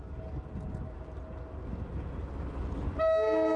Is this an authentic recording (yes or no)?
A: yes